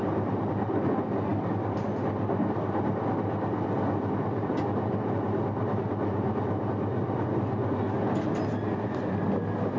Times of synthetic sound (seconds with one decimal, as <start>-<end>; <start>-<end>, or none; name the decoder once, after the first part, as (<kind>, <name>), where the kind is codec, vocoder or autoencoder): none

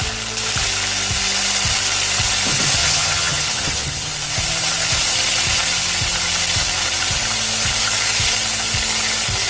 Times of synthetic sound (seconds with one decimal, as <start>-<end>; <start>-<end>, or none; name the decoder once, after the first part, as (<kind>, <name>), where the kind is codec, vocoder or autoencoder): 2.8-4.1 (vocoder, HiFi-GAN)

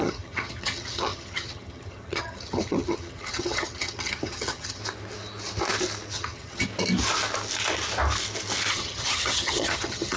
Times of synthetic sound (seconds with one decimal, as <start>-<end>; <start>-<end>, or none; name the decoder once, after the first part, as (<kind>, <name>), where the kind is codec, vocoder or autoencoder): 0.0-4.8 (vocoder, HiFi-GAN); 6.1-6.7; 8.7-10.2

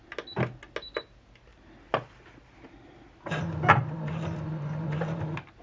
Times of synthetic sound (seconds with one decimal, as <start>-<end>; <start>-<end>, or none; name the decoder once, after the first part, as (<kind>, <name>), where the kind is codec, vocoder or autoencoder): none